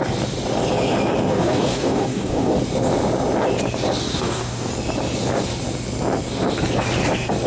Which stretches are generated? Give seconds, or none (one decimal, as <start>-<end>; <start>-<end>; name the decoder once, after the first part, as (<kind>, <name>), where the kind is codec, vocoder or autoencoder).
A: 1.3-2.6 (codec, DAC); 4.1-4.7